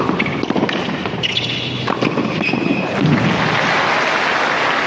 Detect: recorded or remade recorded